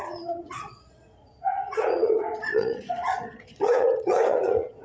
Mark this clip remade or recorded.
remade